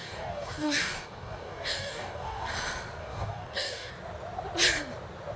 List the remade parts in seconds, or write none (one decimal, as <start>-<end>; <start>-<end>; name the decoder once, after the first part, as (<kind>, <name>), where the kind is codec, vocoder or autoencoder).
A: 0.0-2.5 (codec, DAC); 3.0-3.9